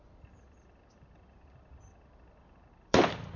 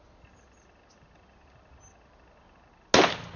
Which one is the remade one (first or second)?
first